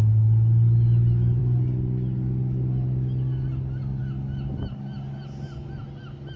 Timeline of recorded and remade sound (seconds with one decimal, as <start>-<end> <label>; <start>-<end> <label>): 0.0-6.4 recorded